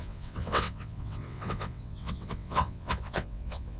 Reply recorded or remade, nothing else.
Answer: remade